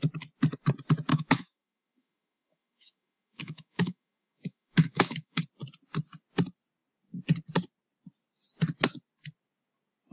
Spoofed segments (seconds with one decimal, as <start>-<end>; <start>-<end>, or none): 1.1-5.4